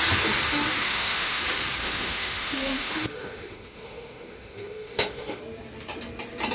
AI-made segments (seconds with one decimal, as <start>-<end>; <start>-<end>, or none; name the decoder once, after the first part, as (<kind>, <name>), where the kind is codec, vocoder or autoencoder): 0.8-1.4 (autoencoder, DAC-VAE); 1.8-5.4